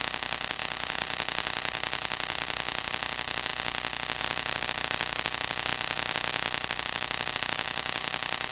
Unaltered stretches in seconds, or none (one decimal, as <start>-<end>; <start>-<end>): 3.5-4.2